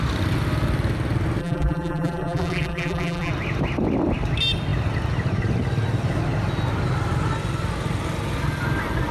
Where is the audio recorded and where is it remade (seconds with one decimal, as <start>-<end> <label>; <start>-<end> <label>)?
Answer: 0.0-1.4 recorded; 1.4-3.3 remade; 3.3-9.1 recorded